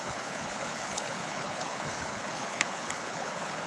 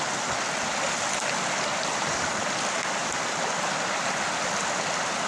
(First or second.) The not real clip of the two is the first